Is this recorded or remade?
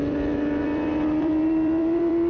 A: remade